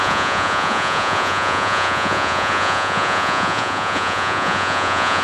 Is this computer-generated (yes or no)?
yes